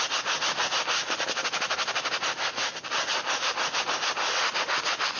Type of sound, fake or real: real